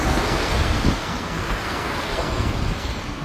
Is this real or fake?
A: fake